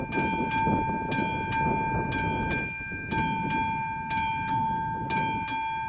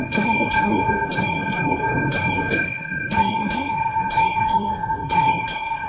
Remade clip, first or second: second